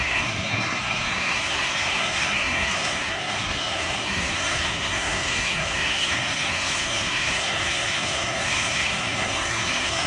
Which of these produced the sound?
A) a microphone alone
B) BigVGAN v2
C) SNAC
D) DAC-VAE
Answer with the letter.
C